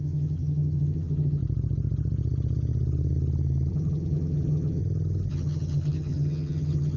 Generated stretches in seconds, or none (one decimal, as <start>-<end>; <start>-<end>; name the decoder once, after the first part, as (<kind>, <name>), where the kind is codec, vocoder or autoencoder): 0.0-1.4 (vocoder, HiFi-GAN); 3.7-4.8; 5.3-7.0